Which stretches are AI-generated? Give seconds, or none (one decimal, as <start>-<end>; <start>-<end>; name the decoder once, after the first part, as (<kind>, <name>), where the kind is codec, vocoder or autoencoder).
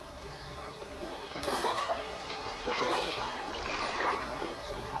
0.0-3.5 (codec, SNAC); 4.2-5.0